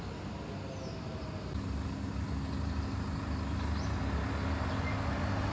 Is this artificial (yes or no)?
no